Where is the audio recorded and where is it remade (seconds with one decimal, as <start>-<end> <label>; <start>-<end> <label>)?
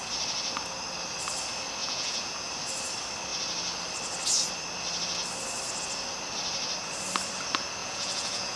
0.0-1.8 recorded; 1.8-2.5 remade; 2.5-7.8 recorded; 7.8-8.6 remade